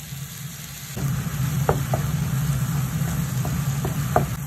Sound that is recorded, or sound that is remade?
recorded